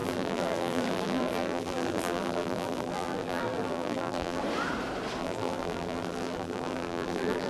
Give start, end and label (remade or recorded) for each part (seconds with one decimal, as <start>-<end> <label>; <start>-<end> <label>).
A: 0.0-4.4 remade; 4.4-5.2 recorded; 5.2-7.5 remade